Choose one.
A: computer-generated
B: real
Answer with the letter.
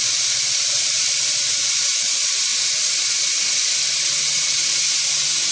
B